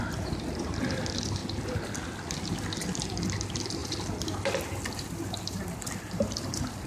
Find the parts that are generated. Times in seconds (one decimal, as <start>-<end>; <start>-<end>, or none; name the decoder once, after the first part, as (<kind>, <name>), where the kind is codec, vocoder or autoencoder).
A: 0.0-1.4 (vocoder, BigVGAN v2); 2.5-6.9